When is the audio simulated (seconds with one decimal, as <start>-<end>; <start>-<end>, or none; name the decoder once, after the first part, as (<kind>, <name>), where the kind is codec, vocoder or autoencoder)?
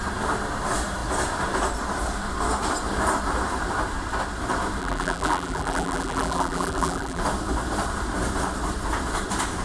4.8-7.2 (vocoder, BigVGAN v2)